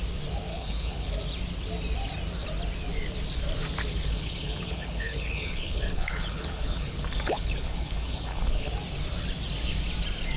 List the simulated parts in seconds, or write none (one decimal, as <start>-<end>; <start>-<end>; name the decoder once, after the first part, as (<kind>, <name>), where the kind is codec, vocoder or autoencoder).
0.5-1.1 (codec, HILCodec); 3.9-8.7